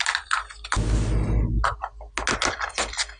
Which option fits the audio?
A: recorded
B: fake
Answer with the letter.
A